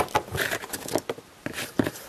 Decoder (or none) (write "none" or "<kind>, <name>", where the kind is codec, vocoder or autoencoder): none